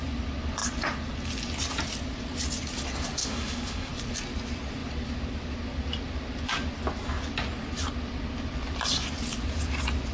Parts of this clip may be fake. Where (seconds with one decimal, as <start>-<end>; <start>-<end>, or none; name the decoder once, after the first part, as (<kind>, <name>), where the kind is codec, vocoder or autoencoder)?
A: 3.2-3.9 (autoencoder, DAC-VAE)